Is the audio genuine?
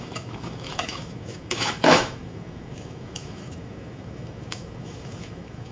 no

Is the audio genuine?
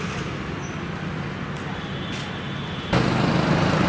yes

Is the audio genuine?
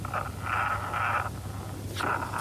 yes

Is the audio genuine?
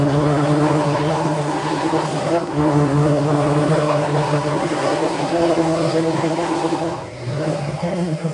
no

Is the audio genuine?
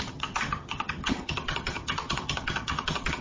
no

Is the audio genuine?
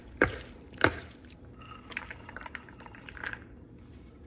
no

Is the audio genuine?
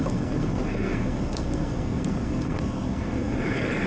no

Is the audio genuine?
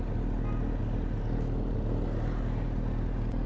yes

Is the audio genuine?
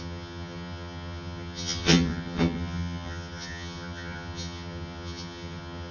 no